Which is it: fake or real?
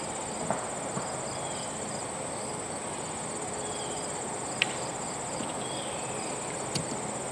real